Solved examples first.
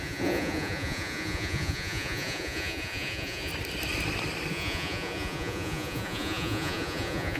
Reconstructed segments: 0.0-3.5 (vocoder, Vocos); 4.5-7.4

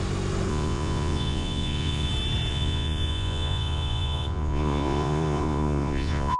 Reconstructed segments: 0.5-2.1 (vocoder, Vocos); 2.5-6.4

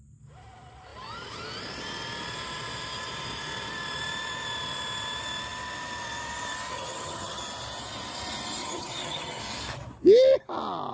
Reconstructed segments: 6.7-7.4 (vocoder, HiFi-GAN); 8.6-9.4